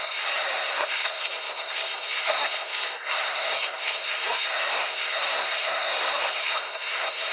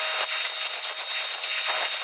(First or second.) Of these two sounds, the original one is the second